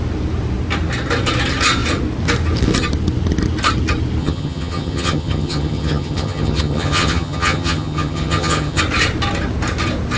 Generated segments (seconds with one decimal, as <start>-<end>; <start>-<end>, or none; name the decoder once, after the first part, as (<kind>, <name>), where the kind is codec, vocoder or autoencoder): 4.2-8.8 (vocoder, HiFi-GAN)